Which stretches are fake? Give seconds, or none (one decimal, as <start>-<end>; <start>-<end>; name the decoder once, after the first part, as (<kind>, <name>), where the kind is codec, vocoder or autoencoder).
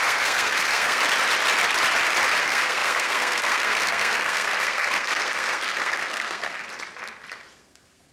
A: 0.0-1.0 (codec, SNAC); 2.4-6.6; 7.5-8.1